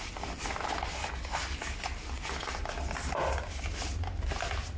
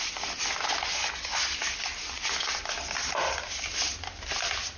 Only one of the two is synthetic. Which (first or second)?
second